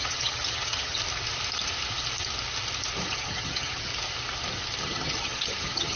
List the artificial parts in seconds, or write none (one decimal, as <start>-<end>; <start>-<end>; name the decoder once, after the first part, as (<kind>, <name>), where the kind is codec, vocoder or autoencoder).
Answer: 0.0-1.0 (vocoder, HiFi-GAN); 3.1-3.9; 4.8-6.0